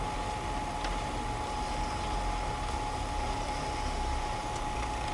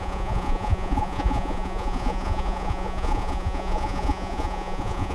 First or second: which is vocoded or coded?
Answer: second